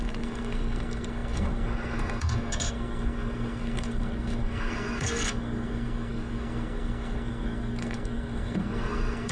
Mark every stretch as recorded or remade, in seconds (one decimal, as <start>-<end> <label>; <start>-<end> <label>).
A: 0.0-9.3 remade